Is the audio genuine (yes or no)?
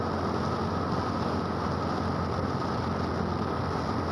yes